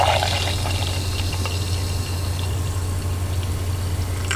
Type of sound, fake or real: real